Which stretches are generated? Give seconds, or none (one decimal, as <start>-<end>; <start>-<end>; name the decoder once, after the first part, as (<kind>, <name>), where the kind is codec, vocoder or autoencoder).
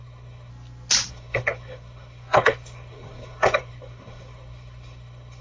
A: 0.0-0.5 (codec, HILCodec); 1.1-5.4